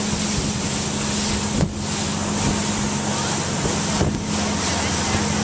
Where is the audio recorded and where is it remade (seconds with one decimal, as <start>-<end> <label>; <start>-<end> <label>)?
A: 0.0-5.4 recorded

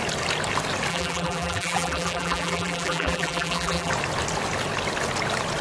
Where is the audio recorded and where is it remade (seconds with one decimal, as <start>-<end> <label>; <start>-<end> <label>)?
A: 0.0-0.9 recorded; 0.9-3.9 remade; 3.9-5.6 recorded